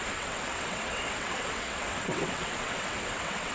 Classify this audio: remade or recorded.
remade